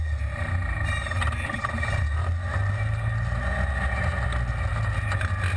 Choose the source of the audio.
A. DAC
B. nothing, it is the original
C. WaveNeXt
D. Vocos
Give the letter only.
B